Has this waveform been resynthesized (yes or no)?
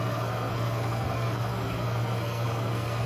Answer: yes